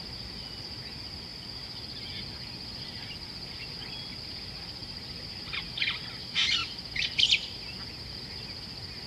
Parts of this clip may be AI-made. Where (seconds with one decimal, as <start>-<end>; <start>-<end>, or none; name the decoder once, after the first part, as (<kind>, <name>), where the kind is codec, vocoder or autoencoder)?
none